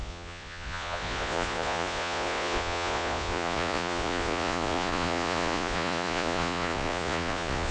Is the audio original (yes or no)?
no